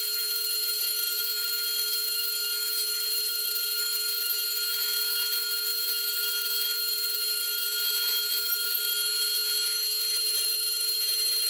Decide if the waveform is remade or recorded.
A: remade